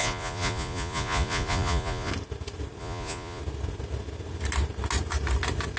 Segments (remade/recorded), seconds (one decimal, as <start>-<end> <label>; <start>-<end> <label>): 0.0-2.1 remade; 2.1-2.8 recorded; 2.8-3.4 remade; 3.4-5.8 recorded